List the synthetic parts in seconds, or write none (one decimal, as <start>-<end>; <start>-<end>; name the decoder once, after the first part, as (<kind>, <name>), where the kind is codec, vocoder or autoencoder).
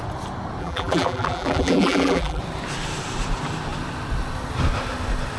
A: 0.6-2.4 (vocoder, BigVGAN v2)